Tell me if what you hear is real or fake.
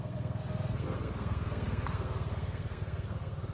fake